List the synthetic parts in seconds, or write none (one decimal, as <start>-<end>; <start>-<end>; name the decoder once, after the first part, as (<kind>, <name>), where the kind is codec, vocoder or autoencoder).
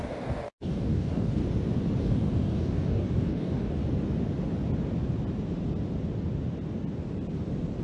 0.0-1.4 (codec, DAC); 2.0-3.8